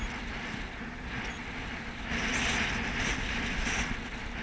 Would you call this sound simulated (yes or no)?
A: no